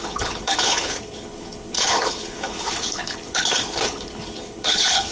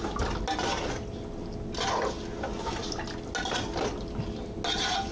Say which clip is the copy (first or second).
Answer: first